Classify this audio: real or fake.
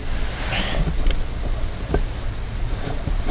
real